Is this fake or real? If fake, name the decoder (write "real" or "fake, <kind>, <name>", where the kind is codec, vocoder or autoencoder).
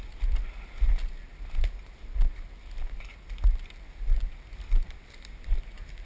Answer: real